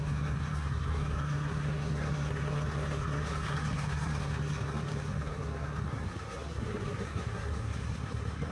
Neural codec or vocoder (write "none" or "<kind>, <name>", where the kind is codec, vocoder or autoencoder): codec, SNAC